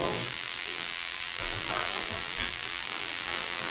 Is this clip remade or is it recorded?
remade